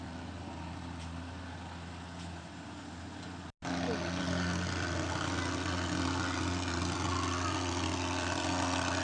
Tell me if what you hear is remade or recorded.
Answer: recorded